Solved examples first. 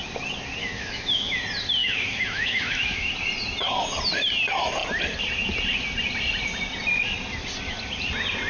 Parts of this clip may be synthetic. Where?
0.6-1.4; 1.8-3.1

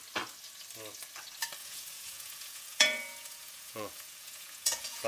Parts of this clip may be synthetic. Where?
1.6-5.1

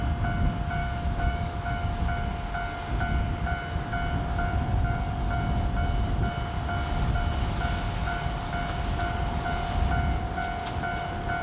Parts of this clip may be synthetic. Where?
0.8-2.0